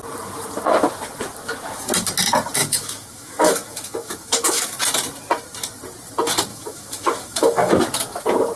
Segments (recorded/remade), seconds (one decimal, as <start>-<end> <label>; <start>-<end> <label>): 0.0-2.6 recorded; 2.6-4.8 remade; 4.8-6.5 recorded; 6.5-7.8 remade; 7.8-8.6 recorded